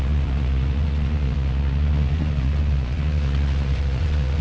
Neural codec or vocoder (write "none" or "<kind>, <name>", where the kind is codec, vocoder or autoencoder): vocoder, Vocos